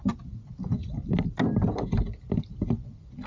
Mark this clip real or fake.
real